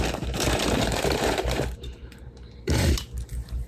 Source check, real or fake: fake